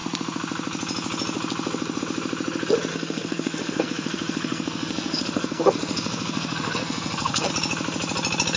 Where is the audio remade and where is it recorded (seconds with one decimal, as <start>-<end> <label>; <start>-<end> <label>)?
0.0-2.9 recorded; 2.9-7.5 remade; 7.5-8.6 recorded